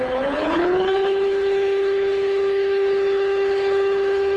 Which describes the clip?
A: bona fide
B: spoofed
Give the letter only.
B